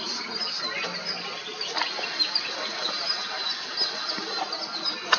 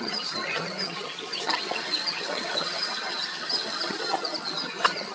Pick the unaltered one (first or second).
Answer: first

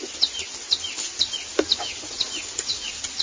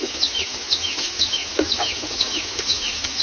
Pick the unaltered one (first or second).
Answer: first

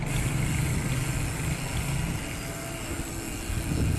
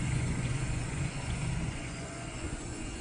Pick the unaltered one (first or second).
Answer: first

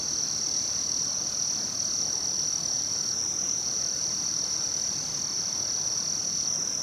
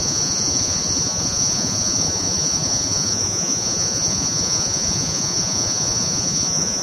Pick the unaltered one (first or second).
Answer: first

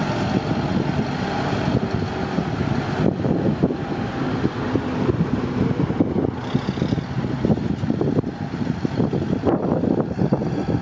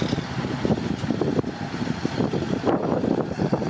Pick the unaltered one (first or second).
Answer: first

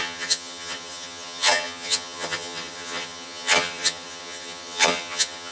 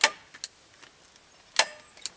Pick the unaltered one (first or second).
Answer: second